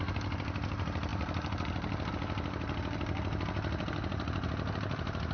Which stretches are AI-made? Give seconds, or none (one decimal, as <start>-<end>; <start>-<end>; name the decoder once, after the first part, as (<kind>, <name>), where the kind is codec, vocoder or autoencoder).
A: none